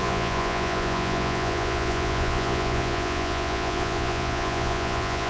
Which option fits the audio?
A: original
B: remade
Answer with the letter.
B